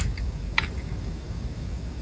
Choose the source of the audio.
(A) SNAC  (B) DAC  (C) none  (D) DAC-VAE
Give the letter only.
B